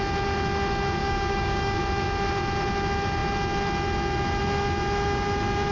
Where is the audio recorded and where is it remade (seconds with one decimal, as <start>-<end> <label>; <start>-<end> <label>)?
0.0-1.0 recorded; 1.0-1.8 remade; 1.8-5.7 recorded